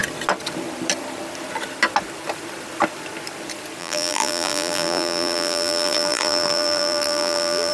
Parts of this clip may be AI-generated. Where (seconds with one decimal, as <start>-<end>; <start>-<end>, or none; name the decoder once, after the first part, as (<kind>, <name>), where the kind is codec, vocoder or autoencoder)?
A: 3.8-7.7 (vocoder, BigVGAN v2)